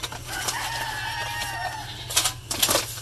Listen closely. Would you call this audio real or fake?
real